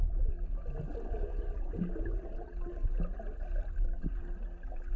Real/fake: real